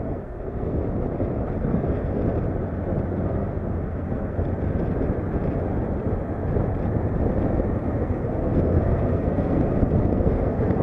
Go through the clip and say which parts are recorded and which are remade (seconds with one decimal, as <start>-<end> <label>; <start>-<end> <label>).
0.0-0.8 remade; 0.8-1.6 recorded; 1.6-2.2 remade; 2.2-3.1 recorded; 3.1-4.4 remade; 4.4-8.0 recorded; 8.0-10.8 remade